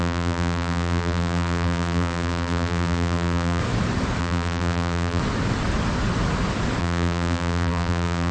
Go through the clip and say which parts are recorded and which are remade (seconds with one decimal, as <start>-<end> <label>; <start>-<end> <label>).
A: 0.0-3.6 remade; 3.6-4.2 recorded; 4.2-5.2 remade; 5.2-6.8 recorded; 6.8-8.3 remade